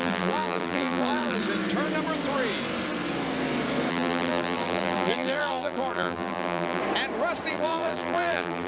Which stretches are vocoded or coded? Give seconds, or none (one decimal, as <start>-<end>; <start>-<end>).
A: 0.0-1.4; 3.9-6.8; 7.5-8.7